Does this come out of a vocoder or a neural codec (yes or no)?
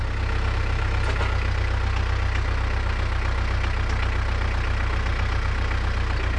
no